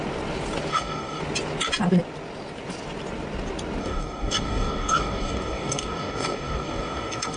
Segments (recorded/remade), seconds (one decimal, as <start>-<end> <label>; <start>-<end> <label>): 0.0-0.7 recorded; 0.7-1.2 remade; 1.2-3.8 recorded; 3.8-7.4 remade